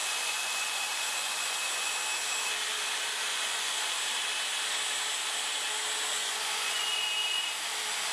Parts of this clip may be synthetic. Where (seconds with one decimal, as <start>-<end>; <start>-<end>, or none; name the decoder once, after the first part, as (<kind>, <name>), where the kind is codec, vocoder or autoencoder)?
0.0-1.9 (vocoder, Vocos); 3.3-4.0; 6.2-7.0